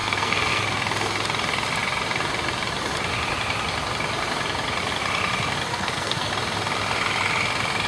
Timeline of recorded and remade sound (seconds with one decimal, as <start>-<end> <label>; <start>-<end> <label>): 0.0-0.6 remade; 0.6-5.7 recorded; 5.7-6.3 remade; 6.3-7.9 recorded